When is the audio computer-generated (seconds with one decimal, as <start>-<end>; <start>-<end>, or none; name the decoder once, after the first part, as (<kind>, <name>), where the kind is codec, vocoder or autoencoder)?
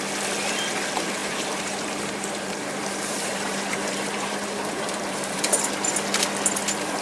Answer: 1.2-5.4 (vocoder, BigVGAN v2)